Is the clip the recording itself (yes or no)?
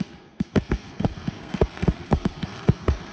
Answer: no